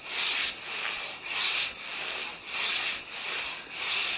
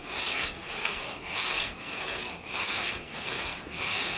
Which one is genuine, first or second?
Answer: first